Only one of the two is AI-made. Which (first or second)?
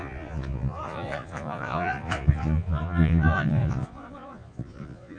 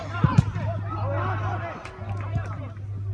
first